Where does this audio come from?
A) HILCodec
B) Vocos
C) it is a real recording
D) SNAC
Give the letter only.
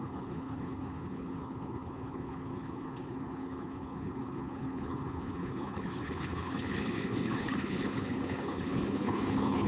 A